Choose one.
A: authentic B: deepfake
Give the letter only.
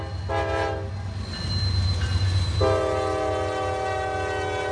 A